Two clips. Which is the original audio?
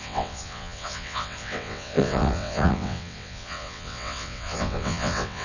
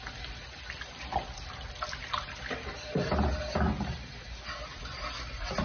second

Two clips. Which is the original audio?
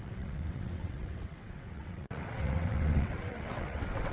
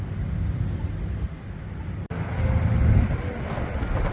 second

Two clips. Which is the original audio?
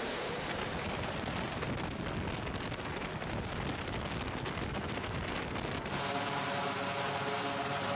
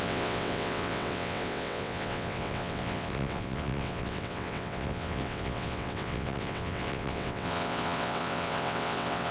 first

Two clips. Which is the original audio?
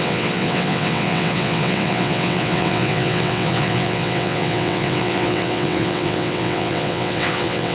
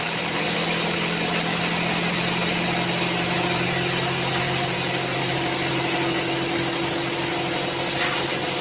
second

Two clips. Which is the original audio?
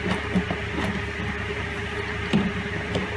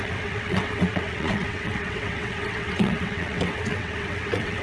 first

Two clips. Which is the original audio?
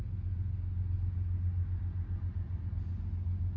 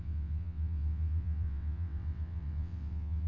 first